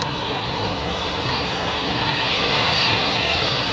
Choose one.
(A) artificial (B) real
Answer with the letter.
A